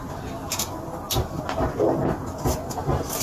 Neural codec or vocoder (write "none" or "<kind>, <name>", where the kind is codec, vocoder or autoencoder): none